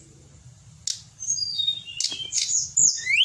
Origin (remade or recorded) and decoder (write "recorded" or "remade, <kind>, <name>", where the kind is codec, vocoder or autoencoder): recorded